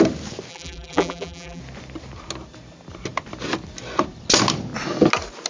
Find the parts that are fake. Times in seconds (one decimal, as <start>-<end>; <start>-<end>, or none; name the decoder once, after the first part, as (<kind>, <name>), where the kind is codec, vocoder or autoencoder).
0.5-1.6 (vocoder, BigVGAN v2)